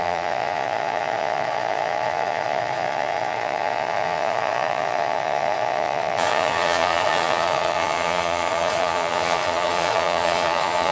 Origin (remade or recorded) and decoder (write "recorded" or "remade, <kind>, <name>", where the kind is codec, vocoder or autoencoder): remade, vocoder, Vocos